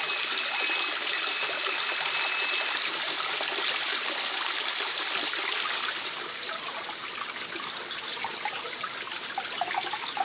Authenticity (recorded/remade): recorded